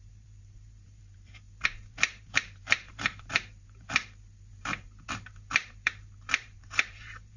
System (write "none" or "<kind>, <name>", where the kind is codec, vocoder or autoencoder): vocoder, BigVGAN v2